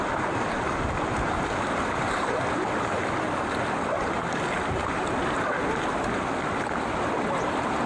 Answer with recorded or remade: recorded